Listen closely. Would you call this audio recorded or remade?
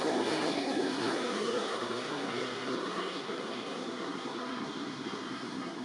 remade